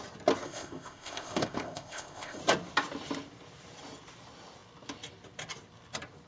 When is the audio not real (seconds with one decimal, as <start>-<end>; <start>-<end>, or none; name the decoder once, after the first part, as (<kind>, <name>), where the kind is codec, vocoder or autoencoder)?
0.4-2.4 (codec, ZipCodec)

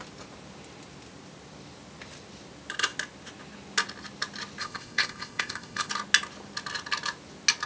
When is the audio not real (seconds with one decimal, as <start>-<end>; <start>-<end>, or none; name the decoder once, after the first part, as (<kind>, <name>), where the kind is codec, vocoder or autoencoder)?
4.6-5.9 (codec, ZipCodec)

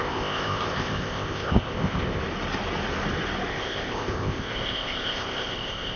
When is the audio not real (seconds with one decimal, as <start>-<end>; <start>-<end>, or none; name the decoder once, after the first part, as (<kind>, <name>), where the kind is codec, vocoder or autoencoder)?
0.0-2.2 (codec, ZipCodec); 3.5-6.0